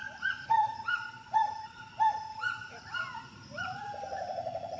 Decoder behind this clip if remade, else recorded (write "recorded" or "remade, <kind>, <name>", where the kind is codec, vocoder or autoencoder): remade, vocoder, Vocos